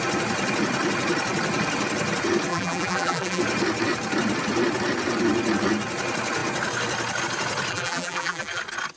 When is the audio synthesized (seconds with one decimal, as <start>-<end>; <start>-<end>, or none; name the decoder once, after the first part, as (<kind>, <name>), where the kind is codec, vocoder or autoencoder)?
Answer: 2.5-3.4 (vocoder, BigVGAN v2); 7.7-8.6